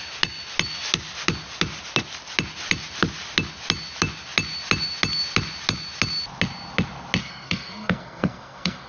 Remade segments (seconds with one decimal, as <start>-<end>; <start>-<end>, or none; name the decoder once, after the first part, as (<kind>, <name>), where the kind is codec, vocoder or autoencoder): 7.2-8.9 (codec, SNAC)